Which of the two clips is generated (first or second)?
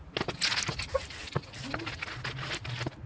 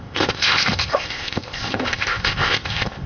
second